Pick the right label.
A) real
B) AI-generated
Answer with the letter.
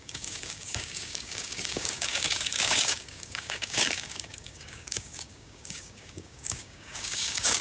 B